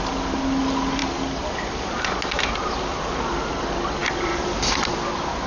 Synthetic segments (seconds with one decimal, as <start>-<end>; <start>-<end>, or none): 4.0-4.9